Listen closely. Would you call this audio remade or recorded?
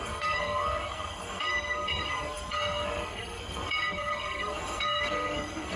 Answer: remade